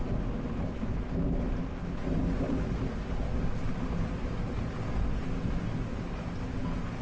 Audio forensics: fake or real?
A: real